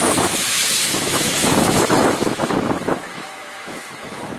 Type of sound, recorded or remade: remade